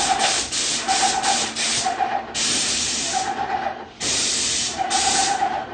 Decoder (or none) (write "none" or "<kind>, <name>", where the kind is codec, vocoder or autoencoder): vocoder, BigVGAN v2